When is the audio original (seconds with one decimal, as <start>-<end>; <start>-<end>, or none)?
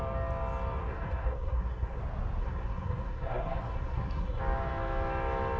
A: 0.0-0.8; 2.0-2.4; 4.4-5.6